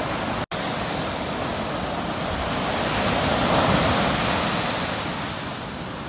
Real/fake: real